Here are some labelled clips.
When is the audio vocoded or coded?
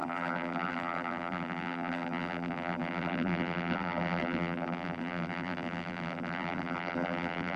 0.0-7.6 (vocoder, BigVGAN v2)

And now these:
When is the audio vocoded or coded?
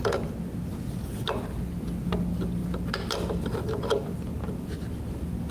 none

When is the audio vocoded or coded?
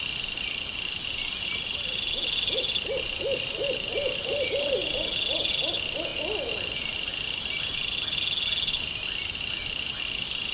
none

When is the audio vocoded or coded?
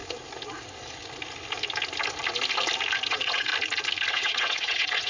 3.1-3.5 (vocoder, WaveNeXt); 4.1-5.1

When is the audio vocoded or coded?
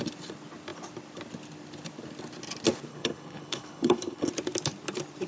2.9-4.3 (codec, HILCodec)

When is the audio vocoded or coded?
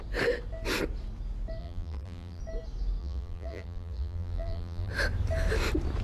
1.6-2.4 (vocoder, BigVGAN v2); 3.0-4.9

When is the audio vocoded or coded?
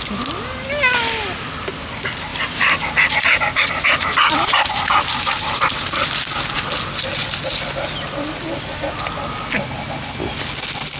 none